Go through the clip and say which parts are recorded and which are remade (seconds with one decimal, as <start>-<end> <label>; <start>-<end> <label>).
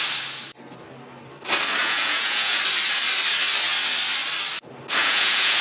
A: 0.0-1.8 recorded; 1.8-2.6 remade; 2.6-5.0 recorded; 5.0-5.6 remade